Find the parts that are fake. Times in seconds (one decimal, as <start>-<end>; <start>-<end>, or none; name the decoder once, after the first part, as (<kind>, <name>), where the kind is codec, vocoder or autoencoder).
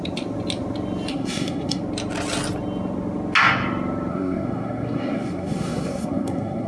1.1-1.8 (codec, SNAC); 4.1-6.7